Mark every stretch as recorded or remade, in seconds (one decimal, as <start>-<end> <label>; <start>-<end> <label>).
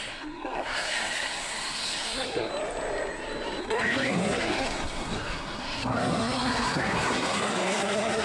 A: 0.0-2.5 remade; 2.5-3.6 recorded; 3.6-8.2 remade